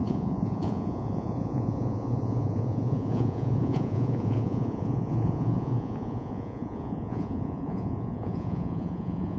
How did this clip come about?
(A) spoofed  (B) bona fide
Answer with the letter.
A